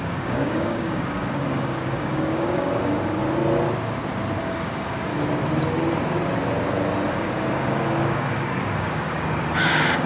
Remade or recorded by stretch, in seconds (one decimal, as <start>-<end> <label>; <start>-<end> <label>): 0.0-3.2 remade; 3.2-4.4 recorded; 4.4-5.1 remade; 5.1-7.1 recorded; 7.1-10.1 remade